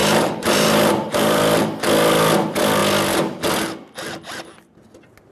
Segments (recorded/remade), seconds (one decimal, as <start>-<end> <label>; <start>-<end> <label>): 0.0-1.4 remade; 1.4-5.3 recorded